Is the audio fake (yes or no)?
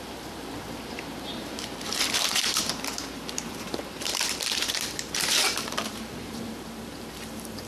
yes